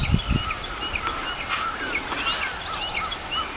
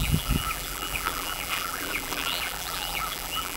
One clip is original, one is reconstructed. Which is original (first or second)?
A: first